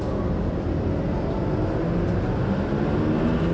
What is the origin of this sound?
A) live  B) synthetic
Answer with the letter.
A